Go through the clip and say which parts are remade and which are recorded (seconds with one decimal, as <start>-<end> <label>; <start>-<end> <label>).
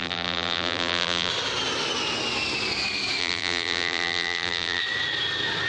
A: 0.0-1.3 remade; 1.3-3.2 recorded; 3.2-4.8 remade; 4.8-5.7 recorded